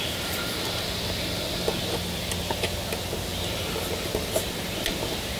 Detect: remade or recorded recorded